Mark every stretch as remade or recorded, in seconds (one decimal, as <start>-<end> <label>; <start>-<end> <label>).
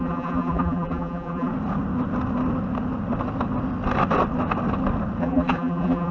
0.0-1.5 remade; 1.5-5.2 recorded; 5.2-6.1 remade